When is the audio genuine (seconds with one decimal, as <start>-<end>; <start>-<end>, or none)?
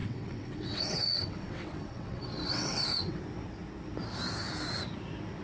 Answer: 3.2-5.4